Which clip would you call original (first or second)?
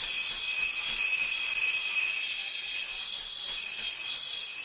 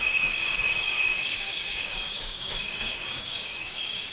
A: first